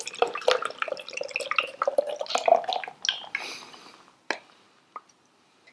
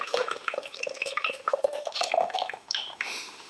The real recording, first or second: first